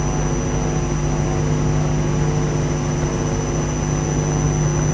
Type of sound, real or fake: real